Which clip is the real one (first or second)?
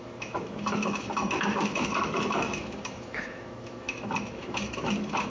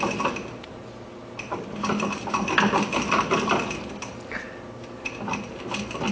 second